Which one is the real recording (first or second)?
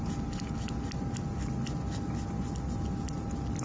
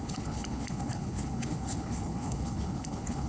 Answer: first